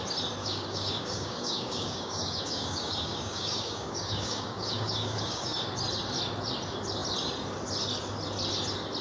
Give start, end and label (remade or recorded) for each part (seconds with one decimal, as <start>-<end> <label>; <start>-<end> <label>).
0.0-0.4 recorded; 0.4-5.6 remade; 5.6-9.0 recorded

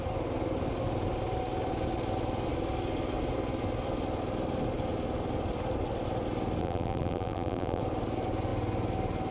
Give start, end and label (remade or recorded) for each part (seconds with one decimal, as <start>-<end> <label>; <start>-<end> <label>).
0.0-6.6 recorded; 6.6-7.8 remade; 7.8-9.3 recorded

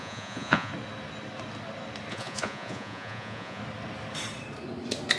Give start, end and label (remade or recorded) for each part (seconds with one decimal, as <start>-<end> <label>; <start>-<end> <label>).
0.0-0.7 remade; 0.7-2.1 recorded; 2.1-3.6 remade; 3.6-5.2 recorded

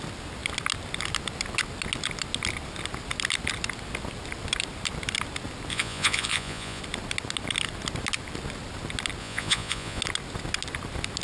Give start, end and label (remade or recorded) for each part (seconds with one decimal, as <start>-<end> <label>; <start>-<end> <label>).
0.0-5.7 recorded; 5.7-6.8 remade; 6.8-9.2 recorded; 9.2-10.0 remade; 10.0-11.2 recorded

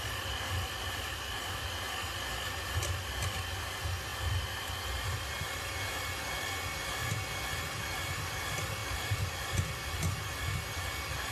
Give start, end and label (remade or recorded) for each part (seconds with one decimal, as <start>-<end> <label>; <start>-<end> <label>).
0.0-11.3 recorded

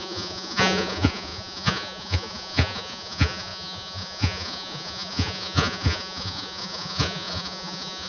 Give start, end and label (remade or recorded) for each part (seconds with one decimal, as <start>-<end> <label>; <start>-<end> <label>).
0.0-8.1 remade

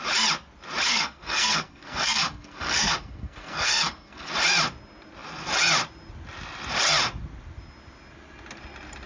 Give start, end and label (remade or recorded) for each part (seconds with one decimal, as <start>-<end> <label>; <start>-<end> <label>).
0.0-0.9 recorded; 0.9-4.3 remade; 4.3-9.1 recorded

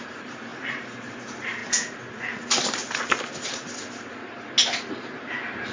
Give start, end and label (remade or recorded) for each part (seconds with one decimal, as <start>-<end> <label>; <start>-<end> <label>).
0.0-1.6 remade; 1.6-5.0 recorded; 5.0-5.7 remade